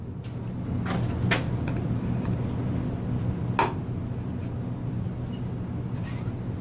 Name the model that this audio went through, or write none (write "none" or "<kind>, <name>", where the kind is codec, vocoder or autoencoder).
none